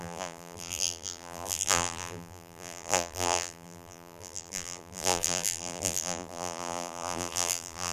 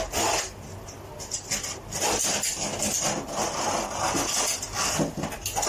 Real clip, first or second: second